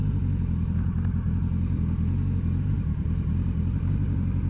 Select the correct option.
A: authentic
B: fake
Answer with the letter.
A